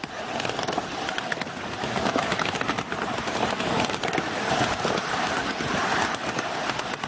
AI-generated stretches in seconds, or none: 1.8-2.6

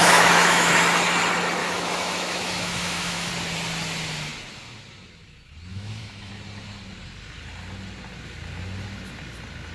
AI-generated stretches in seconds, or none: 0.0-0.7; 1.6-3.3; 5.7-6.3

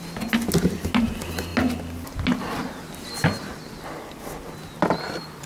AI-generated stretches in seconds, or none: none

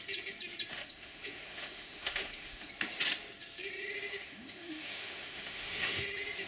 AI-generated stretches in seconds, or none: 0.7-2.7; 4.1-6.0

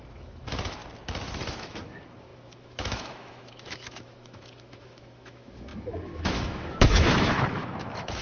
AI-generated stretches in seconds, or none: 0.0-0.8; 1.5-8.2

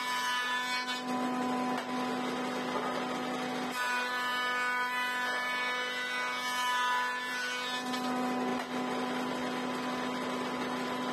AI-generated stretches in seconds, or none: none

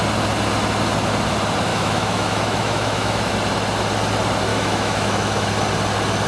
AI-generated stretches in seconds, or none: 1.7-3.3; 4.5-5.5

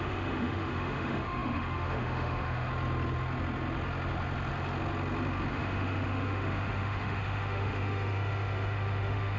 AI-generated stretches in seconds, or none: 0.0-2.7; 5.5-9.4